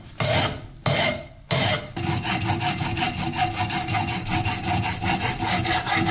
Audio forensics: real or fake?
real